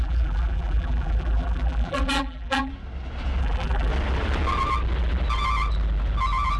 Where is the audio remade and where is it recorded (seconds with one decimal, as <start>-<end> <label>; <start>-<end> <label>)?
0.0-2.7 remade; 2.7-3.4 recorded; 3.4-3.9 remade; 3.9-6.6 recorded